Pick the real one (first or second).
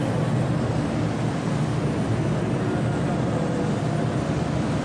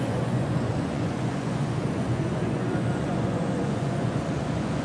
first